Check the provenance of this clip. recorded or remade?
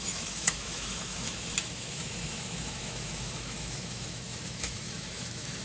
remade